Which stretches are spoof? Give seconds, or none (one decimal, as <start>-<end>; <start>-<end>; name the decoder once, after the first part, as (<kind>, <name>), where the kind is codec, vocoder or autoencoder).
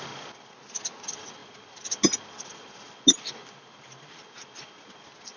3.4-4.0 (vocoder, BigVGAN v2)